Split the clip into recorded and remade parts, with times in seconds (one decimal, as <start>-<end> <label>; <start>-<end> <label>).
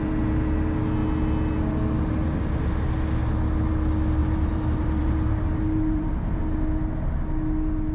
0.0-4.2 recorded; 4.2-6.4 remade; 6.4-7.9 recorded